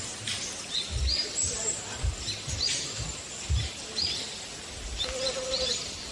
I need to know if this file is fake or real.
real